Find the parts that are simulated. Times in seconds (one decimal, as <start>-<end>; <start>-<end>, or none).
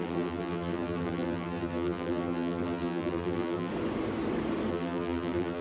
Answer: 0.0-3.7; 4.7-5.6